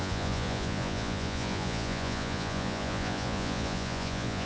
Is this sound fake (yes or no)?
yes